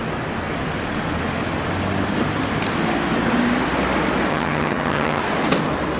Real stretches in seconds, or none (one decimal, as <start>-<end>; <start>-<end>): 0.0-4.3; 5.2-6.0